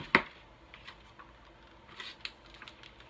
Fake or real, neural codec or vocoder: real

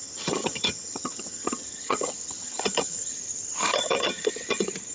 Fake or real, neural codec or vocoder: fake, vocoder, HiFi-GAN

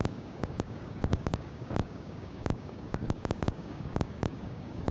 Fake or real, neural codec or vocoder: fake, codec, DAC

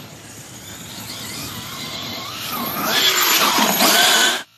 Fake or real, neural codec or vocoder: real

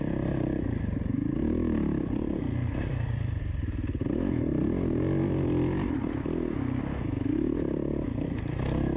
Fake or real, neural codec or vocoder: real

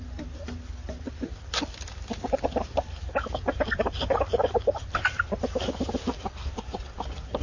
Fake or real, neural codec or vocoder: real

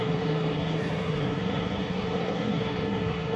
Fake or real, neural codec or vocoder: fake, codec, SNAC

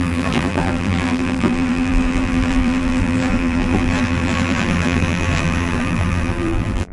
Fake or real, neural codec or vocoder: fake, vocoder, BigVGAN v2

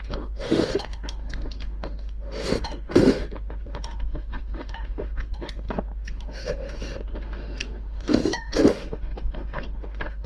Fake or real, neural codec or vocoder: fake, autoencoder, DAC-VAE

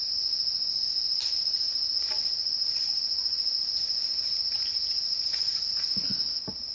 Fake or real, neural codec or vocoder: real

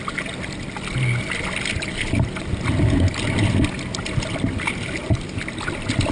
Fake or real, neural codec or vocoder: real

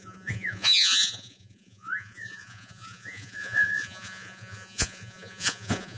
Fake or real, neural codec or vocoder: fake, vocoder, Vocos